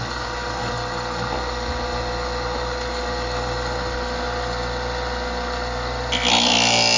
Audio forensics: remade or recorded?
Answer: recorded